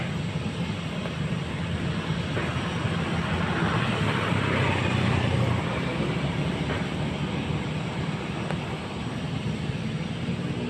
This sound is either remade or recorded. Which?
recorded